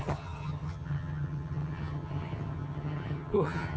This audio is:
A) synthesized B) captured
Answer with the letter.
A